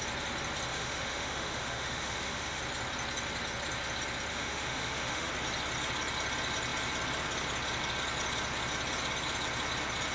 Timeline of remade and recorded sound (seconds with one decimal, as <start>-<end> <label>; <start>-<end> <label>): 0.0-0.7 recorded; 0.7-2.6 remade; 2.6-4.3 recorded; 4.3-5.3 remade; 5.3-10.1 recorded